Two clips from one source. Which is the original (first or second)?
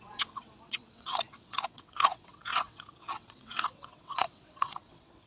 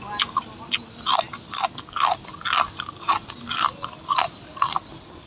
second